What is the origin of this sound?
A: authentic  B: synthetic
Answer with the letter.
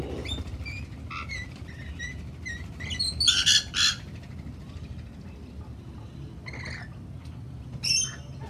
A